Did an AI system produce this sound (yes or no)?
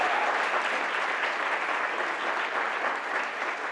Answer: no